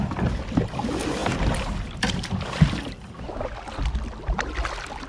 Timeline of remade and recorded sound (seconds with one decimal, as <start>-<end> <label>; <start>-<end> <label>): 0.0-5.1 recorded